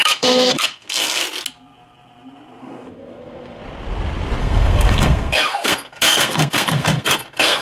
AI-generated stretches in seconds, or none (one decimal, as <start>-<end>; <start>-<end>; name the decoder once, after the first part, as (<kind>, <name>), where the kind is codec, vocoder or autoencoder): 0.0-1.2 (codec, SNAC); 2.6-3.6; 4.4-7.6